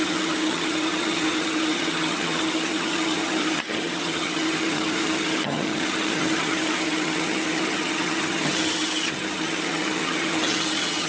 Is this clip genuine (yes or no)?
no